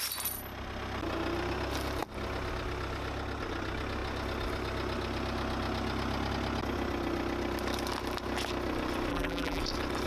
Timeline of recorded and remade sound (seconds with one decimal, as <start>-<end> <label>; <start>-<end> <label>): 0.0-9.1 recorded; 9.1-9.6 remade; 9.6-10.1 recorded